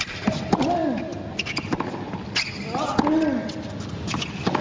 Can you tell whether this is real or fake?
real